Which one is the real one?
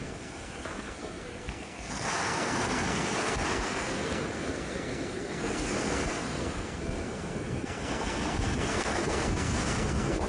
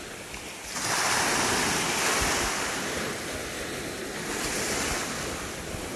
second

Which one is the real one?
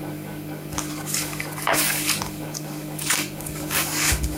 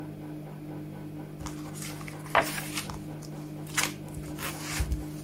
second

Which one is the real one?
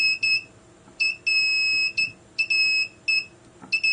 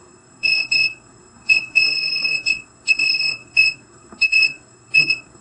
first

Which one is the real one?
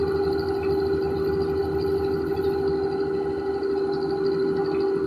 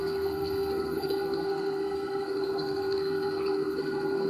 first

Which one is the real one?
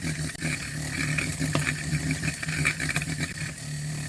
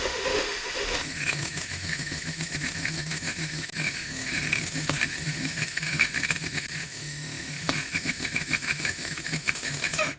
first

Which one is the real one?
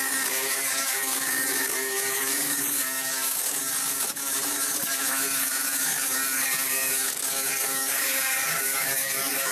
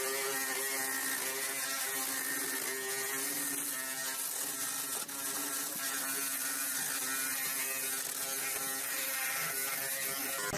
second